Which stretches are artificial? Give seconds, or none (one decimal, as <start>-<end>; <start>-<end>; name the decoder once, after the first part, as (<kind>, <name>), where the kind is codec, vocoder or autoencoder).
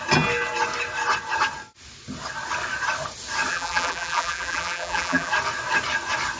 3.5-5.3 (vocoder, BigVGAN v2)